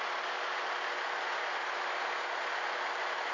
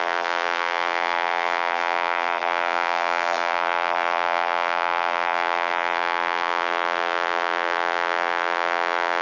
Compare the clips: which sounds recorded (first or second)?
first